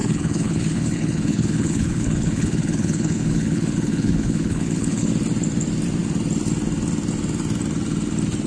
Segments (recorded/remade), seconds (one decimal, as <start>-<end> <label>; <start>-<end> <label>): 0.0-5.1 remade; 5.1-8.5 recorded